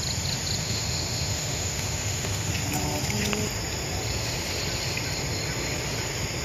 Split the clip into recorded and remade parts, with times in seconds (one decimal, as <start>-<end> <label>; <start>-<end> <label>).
0.0-0.6 recorded; 0.6-2.5 remade; 2.5-6.4 recorded